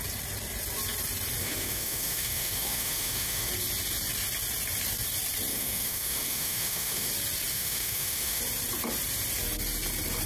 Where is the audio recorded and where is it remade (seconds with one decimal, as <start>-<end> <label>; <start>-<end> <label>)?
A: 0.0-1.4 recorded; 1.4-3.5 remade; 3.5-5.5 recorded; 5.5-7.1 remade; 7.1-7.5 recorded; 7.5-8.4 remade; 8.4-10.3 recorded